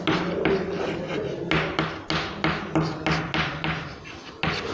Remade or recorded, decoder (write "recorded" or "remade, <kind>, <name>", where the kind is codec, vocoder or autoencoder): recorded